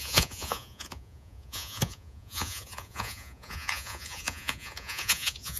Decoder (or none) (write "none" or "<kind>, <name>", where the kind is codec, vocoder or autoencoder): vocoder, Vocos